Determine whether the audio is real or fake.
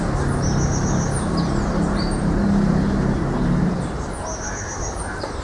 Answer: real